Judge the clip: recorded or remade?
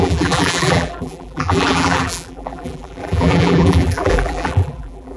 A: remade